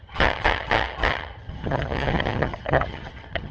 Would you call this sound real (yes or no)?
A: no